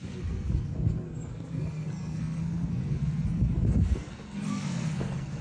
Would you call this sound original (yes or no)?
no